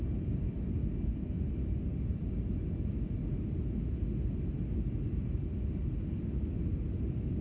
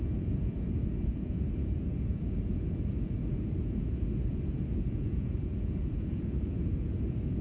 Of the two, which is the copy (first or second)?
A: second